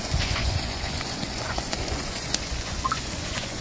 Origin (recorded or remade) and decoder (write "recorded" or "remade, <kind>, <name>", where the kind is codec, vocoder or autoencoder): remade, vocoder, Vocos